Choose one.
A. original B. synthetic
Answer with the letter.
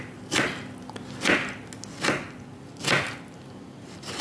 A